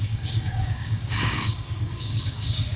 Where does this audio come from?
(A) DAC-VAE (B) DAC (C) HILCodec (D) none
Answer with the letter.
B